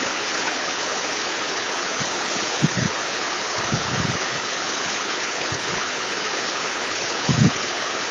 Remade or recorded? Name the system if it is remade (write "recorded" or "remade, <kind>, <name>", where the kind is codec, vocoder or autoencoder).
remade, codec, HILCodec